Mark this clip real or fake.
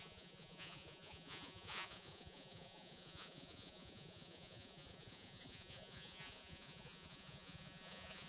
fake